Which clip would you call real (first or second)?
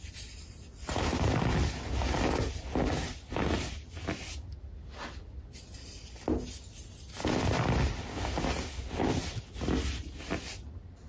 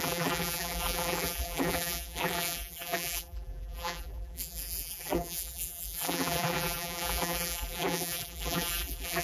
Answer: first